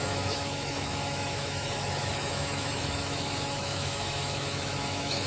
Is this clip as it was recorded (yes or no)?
no